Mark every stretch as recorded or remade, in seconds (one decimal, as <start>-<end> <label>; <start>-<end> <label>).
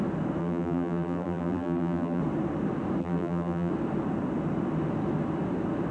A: 0.0-0.4 recorded; 0.4-2.2 remade; 2.2-3.0 recorded; 3.0-3.7 remade; 3.7-5.9 recorded